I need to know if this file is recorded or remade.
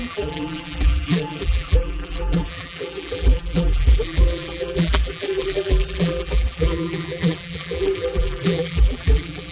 remade